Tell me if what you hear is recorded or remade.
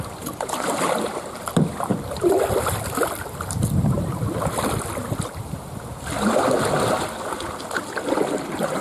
recorded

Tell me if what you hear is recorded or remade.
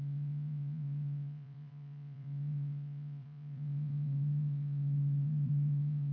remade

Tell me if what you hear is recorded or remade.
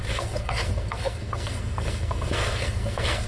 remade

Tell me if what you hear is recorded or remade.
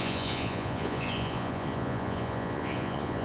remade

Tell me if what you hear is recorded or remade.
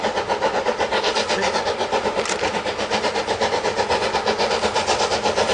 recorded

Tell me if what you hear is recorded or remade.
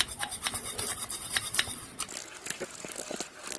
recorded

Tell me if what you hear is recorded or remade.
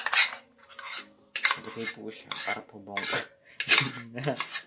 recorded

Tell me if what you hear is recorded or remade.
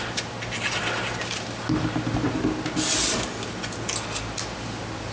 recorded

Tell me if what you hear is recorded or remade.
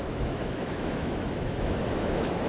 remade